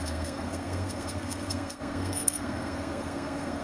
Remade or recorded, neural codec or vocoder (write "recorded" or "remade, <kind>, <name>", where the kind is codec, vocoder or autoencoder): remade, codec, SNAC